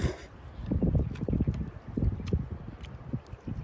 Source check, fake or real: real